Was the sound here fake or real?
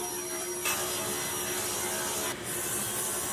fake